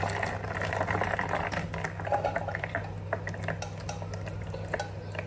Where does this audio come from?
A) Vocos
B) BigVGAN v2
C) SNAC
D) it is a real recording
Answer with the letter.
D